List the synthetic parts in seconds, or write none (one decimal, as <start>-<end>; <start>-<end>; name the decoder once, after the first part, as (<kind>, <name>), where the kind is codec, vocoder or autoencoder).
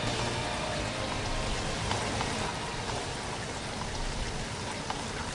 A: none